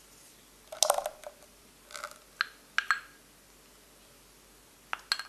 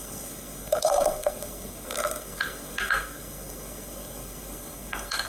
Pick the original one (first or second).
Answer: first